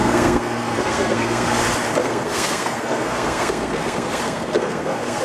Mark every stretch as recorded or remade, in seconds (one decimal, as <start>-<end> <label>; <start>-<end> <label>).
0.0-1.6 remade; 1.6-2.0 recorded; 2.0-5.2 remade